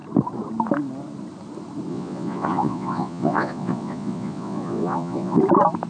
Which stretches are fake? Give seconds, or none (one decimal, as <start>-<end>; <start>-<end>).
1.9-5.4